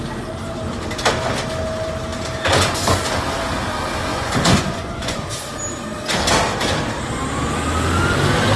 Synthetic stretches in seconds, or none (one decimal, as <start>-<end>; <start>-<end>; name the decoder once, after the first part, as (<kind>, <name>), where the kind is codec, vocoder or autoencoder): 4.1-5.2 (vocoder, Vocos)